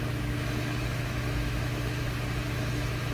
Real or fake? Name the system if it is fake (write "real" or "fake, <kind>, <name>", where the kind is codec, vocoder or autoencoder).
fake, autoencoder, DAC-VAE